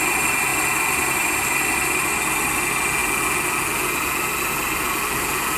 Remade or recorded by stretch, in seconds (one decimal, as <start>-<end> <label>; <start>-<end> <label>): 0.0-5.6 recorded

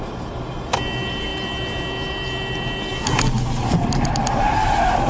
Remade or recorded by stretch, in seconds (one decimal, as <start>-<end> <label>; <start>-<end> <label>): 0.0-5.1 recorded

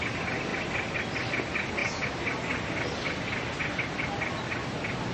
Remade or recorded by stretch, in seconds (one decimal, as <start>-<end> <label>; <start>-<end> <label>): 0.0-5.1 recorded

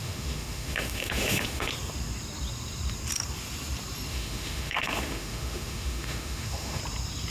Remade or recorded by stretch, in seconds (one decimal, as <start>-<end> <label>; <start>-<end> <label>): 0.0-1.7 remade; 1.7-4.1 recorded; 4.1-6.8 remade; 6.8-7.3 recorded

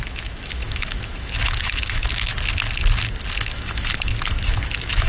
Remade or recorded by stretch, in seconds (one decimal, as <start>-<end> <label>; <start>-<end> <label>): 0.0-2.3 remade; 2.3-3.4 recorded; 3.4-5.1 remade

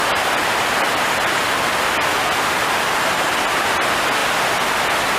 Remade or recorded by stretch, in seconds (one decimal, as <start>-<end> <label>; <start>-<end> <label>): 0.0-5.2 recorded

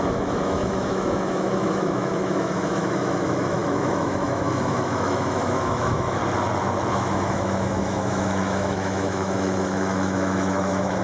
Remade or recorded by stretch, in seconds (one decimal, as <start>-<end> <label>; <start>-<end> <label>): 0.0-6.2 remade; 6.2-6.9 recorded; 6.9-11.0 remade

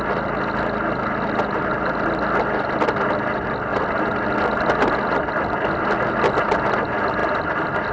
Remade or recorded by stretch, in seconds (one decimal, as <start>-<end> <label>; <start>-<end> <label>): 0.0-7.9 recorded